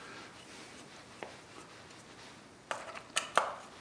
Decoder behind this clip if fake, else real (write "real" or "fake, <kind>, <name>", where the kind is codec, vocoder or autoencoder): real